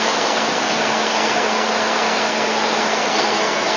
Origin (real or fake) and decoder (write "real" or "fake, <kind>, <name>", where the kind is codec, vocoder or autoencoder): fake, codec, SNAC